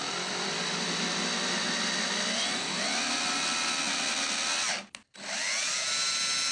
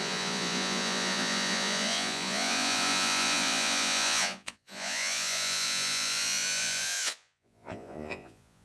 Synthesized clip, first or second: second